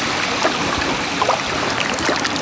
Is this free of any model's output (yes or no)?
yes